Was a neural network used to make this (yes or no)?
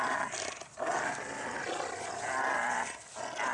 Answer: no